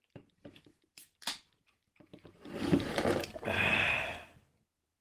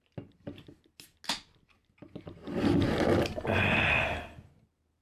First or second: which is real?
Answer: second